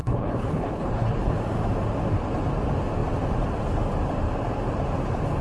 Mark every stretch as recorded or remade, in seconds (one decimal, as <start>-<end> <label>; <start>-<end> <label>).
0.0-1.3 remade; 1.3-5.4 recorded